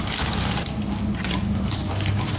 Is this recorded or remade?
recorded